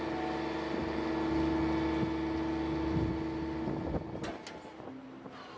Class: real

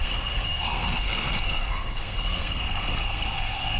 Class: fake